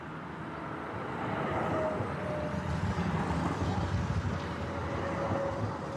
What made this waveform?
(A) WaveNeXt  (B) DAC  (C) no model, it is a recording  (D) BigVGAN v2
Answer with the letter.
C